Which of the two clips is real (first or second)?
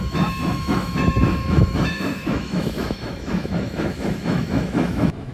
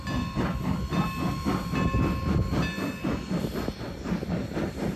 second